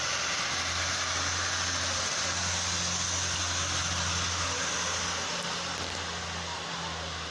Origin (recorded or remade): recorded